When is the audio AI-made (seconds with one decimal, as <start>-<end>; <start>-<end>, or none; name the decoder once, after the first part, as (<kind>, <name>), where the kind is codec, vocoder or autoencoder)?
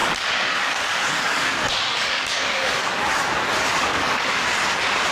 0.0-3.1 (codec, DAC); 3.9-4.4